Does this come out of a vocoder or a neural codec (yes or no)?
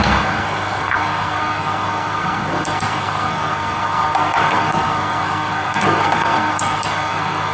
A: yes